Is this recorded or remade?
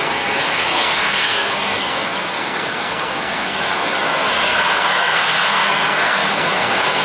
remade